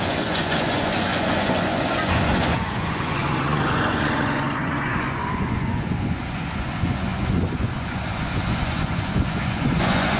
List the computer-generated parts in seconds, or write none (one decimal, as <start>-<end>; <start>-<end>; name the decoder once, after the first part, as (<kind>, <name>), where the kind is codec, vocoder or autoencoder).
0.0-10.2 (vocoder, Vocos)